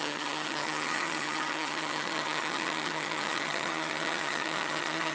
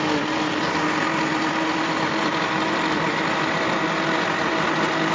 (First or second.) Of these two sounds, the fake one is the first